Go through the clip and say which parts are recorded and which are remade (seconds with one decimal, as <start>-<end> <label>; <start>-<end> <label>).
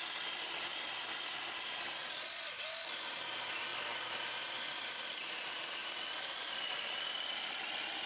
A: 0.0-0.7 recorded; 0.7-3.0 remade; 3.0-3.7 recorded; 3.7-5.3 remade; 5.3-5.8 recorded; 5.8-7.3 remade; 7.3-8.1 recorded